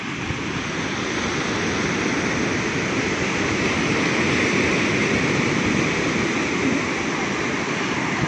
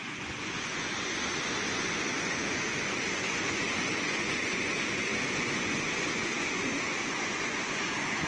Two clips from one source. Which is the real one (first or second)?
first